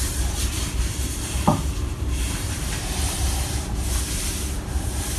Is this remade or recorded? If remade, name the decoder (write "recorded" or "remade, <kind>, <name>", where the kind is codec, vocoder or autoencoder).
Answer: remade, vocoder, BigVGAN v2